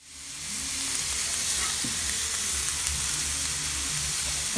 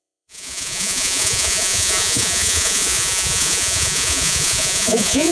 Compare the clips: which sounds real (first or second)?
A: first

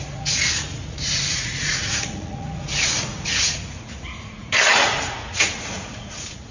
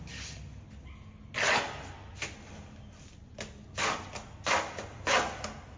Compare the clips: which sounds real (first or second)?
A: second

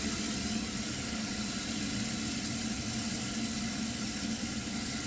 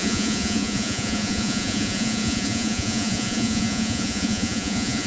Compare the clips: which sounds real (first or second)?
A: first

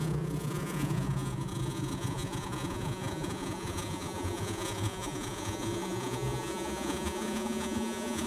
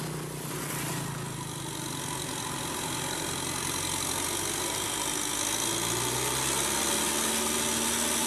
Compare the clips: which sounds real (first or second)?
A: second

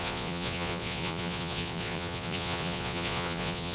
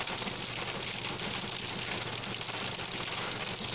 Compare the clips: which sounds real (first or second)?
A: second